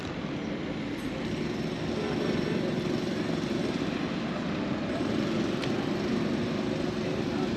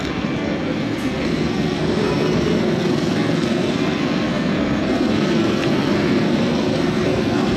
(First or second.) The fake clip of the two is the second